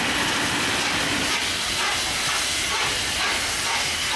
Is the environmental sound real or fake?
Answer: real